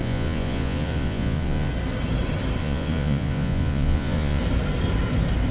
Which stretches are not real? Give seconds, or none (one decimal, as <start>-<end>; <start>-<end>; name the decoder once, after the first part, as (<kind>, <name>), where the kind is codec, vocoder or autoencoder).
0.0-1.7 (vocoder, Vocos); 2.6-4.4